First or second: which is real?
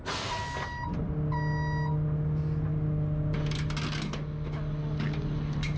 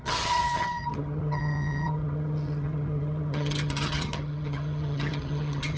first